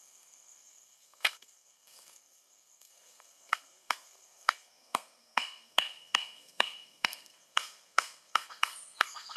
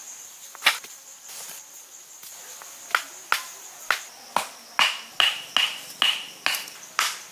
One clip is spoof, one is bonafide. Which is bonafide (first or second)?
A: second